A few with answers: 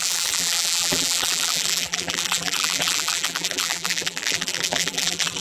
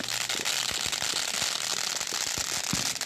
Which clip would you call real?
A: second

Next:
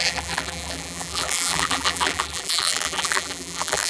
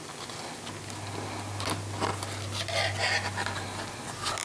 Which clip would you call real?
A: second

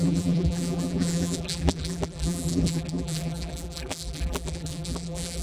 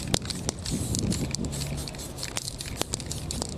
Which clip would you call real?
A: second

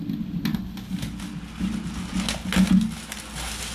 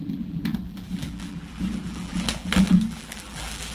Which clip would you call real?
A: first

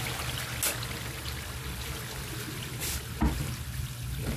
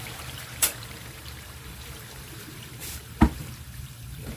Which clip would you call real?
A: first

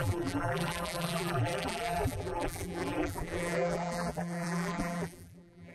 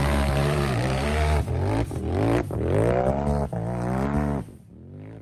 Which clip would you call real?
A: second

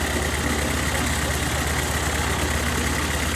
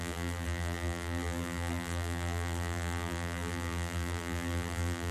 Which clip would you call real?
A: first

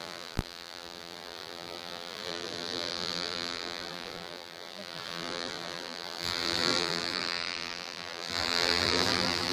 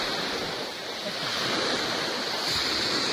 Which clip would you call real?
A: second